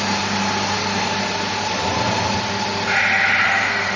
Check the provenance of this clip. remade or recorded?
recorded